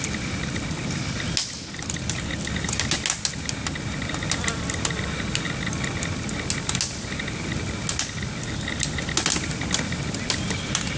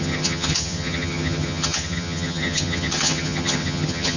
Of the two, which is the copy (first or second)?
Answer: second